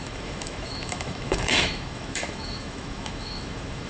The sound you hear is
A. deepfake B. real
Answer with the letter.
A